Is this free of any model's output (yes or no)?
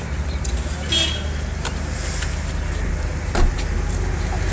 yes